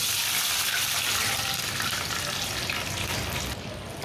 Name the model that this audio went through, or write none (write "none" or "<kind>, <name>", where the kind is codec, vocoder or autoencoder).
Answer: none